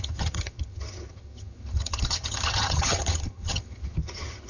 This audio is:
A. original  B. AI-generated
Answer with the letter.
B